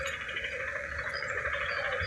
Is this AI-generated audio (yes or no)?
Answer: yes